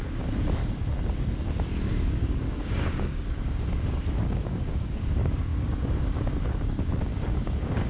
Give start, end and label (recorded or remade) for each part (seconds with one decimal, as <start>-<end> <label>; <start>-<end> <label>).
0.0-0.6 remade; 0.6-1.8 recorded; 1.8-7.9 remade